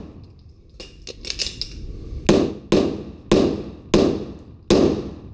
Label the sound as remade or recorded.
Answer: recorded